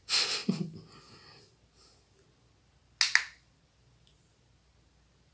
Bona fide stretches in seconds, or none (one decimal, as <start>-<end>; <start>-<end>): 0.0-5.3